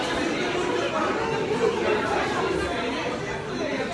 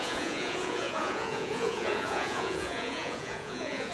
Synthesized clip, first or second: second